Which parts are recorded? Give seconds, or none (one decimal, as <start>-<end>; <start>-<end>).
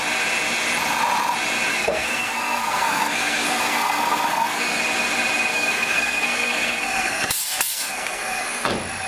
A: 0.0-1.7; 4.8-5.5; 8.7-9.1